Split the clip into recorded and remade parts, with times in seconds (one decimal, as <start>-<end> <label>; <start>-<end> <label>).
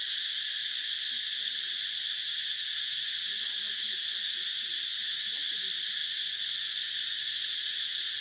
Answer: 0.0-8.2 recorded